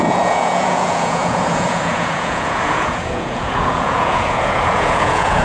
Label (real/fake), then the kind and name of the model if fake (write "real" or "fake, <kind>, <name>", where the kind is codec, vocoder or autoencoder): fake, vocoder, Vocos